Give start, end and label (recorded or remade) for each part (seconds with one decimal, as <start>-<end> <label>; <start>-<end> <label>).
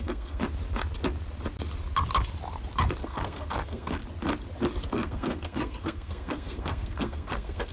0.0-0.4 remade; 0.4-3.0 recorded; 3.0-4.0 remade; 4.0-4.9 recorded; 4.9-7.7 remade